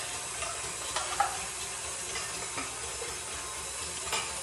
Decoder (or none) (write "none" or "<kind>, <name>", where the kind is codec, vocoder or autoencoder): none